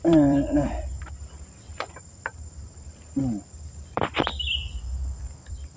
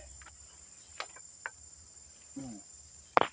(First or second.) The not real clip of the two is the first